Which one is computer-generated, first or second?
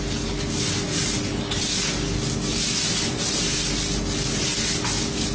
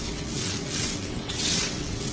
second